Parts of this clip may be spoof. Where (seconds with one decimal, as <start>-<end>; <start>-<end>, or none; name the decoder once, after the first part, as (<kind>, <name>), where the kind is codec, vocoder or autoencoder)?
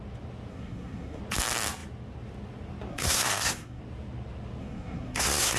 0.5-1.2 (codec, SNAC); 2.9-3.8; 4.6-5.6